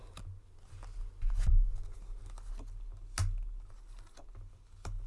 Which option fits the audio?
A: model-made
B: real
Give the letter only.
B